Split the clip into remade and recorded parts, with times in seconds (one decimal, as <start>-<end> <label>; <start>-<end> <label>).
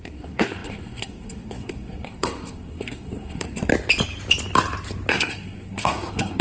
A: 0.0-3.7 remade; 3.7-5.1 recorded; 5.1-6.4 remade